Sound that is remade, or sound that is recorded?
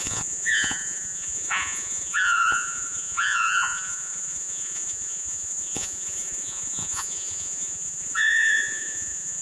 remade